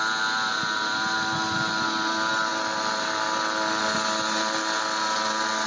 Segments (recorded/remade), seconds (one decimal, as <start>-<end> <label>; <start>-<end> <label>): 0.0-5.7 recorded